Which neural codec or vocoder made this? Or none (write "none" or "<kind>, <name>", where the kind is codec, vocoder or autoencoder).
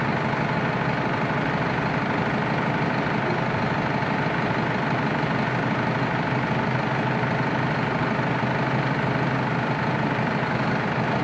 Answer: none